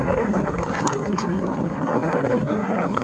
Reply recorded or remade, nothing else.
remade